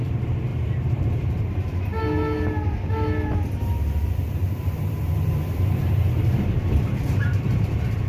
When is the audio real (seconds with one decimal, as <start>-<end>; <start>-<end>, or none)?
1.9-4.1